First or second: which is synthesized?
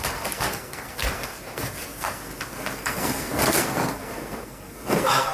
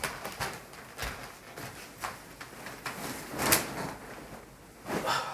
first